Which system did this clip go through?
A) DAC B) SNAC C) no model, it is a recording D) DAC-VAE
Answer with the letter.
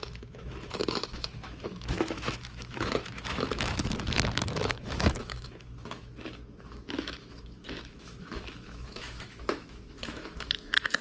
D